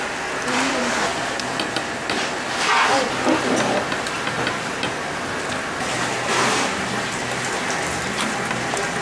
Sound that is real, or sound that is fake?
real